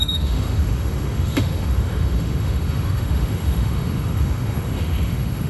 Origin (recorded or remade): remade